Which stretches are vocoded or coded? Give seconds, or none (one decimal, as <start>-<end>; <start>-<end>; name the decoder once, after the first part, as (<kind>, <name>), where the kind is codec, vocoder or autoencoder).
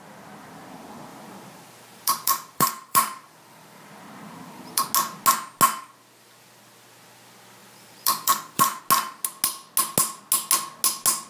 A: 1.1-4.9 (vocoder, BigVGAN v2); 7.6-8.8